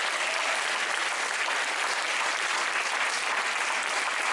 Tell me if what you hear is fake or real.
real